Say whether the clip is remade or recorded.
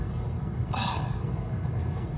remade